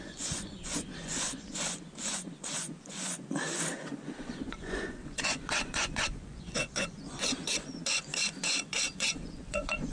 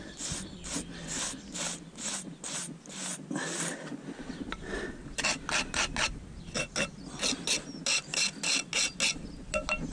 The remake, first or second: first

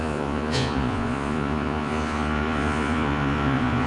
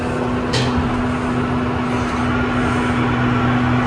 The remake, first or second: first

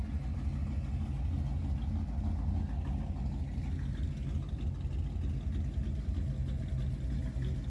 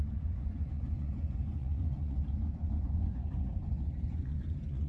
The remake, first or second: second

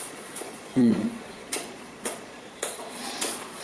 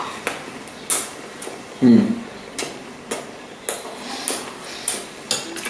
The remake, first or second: first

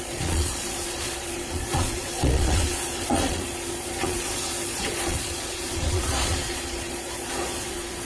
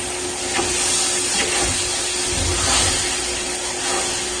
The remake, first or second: first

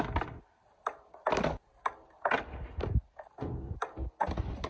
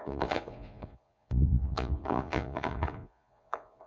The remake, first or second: second